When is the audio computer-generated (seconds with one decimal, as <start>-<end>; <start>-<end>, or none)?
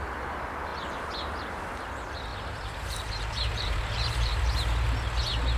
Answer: 2.3-4.5